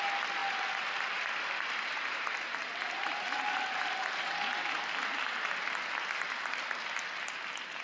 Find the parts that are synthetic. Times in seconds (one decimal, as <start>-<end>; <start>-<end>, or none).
0.4-4.3